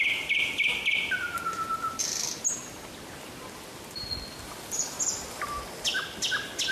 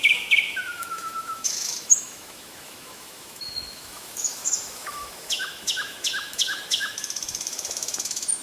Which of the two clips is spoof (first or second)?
second